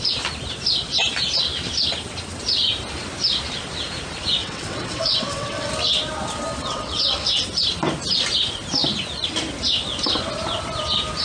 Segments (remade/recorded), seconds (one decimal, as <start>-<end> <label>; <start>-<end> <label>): 0.0-4.4 recorded; 4.4-5.7 remade; 5.7-6.6 recorded; 6.6-7.4 remade; 7.4-11.2 recorded